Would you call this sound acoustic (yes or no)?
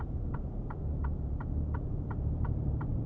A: no